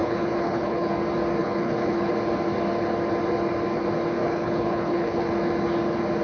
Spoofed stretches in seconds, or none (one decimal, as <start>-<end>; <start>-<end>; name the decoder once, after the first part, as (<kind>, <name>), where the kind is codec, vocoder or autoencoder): 0.0-0.9 (codec, HILCodec); 1.4-2.1; 4.2-5.3